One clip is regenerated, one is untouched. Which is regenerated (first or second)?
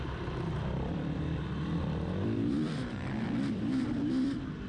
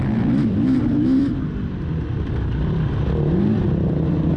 first